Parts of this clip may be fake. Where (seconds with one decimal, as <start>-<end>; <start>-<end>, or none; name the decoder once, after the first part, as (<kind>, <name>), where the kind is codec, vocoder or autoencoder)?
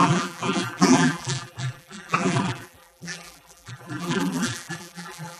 0.0-5.4 (vocoder, BigVGAN v2)